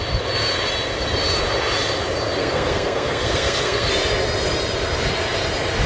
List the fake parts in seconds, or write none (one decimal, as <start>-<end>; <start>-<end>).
2.4-3.9